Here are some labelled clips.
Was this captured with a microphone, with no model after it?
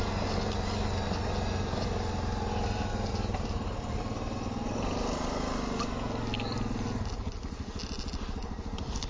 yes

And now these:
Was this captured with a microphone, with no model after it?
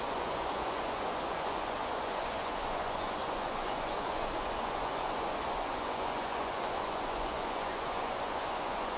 no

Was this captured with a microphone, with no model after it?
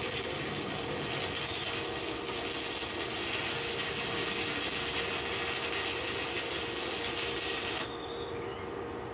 yes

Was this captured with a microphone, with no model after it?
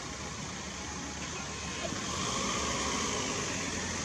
yes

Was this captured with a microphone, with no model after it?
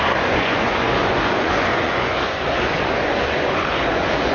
no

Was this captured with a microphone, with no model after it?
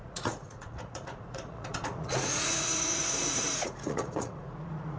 no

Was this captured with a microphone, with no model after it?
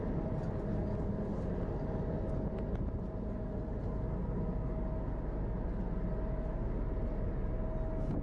yes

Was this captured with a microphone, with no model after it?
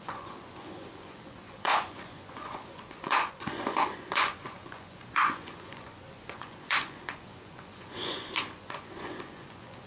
no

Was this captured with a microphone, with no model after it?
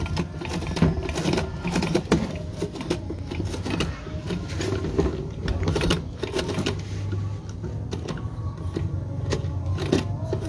yes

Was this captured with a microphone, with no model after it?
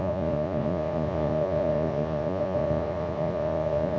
no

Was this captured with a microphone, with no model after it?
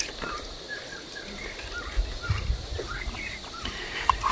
yes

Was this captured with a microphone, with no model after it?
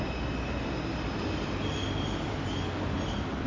yes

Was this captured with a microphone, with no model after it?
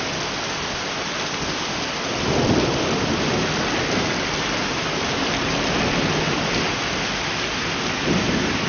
yes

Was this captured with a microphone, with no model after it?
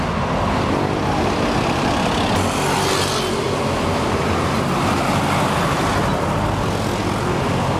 yes